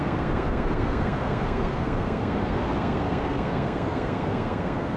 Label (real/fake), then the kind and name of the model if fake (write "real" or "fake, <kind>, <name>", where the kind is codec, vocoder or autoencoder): fake, codec, SNAC